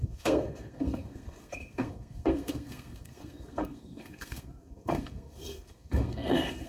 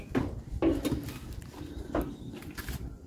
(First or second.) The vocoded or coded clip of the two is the first